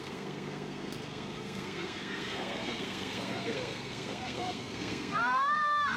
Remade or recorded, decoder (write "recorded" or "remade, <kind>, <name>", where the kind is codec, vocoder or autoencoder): remade, codec, SNAC